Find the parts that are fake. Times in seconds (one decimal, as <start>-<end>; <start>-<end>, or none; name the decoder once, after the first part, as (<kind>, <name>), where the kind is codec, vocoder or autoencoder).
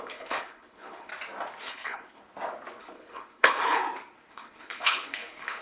0.0-1.1 (codec, HILCodec); 1.6-2.2; 2.8-3.8; 4.3-5.6